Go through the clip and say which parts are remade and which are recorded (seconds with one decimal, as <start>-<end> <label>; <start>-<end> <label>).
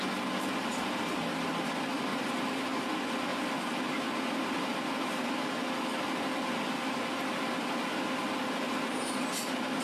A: 0.0-0.7 recorded; 0.7-1.2 remade; 1.2-2.1 recorded; 2.1-2.8 remade; 2.8-8.2 recorded; 8.2-9.3 remade; 9.3-9.8 recorded